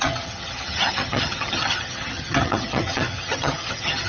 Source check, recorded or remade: remade